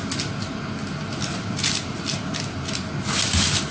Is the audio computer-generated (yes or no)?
no